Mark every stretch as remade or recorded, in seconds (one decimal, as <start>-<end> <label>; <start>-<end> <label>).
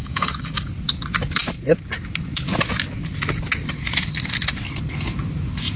0.0-0.7 remade; 0.7-5.8 recorded